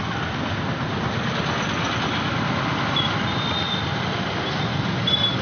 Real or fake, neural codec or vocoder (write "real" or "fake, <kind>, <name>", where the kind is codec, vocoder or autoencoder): real